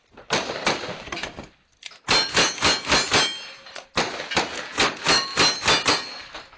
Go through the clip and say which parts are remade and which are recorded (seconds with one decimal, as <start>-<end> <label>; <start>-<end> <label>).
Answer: 0.0-6.6 recorded